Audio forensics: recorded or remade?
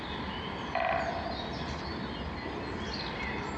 recorded